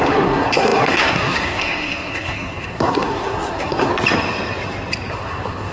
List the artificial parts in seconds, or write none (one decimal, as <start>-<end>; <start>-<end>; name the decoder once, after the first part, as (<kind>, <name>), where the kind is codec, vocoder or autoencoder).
0.0-3.9 (codec, SNAC); 5.1-5.7